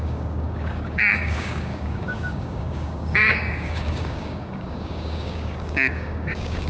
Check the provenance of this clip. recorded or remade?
remade